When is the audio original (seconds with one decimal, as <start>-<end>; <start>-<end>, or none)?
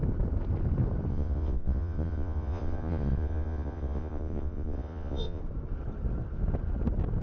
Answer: 0.0-1.1; 5.4-7.2